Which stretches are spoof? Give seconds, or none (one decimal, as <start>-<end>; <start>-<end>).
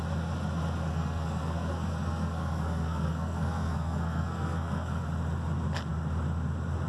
0.9-5.0